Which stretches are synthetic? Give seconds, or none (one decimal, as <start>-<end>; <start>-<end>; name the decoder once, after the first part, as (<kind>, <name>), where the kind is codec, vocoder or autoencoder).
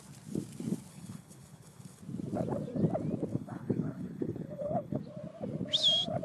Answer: 0.9-2.0 (codec, HILCodec); 3.3-5.0